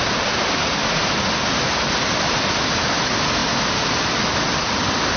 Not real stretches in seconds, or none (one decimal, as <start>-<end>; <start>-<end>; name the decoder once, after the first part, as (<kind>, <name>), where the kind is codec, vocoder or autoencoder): none